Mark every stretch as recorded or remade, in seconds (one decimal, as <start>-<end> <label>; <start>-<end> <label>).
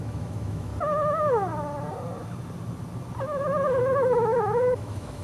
0.0-0.7 remade; 0.7-3.8 recorded; 3.8-5.2 remade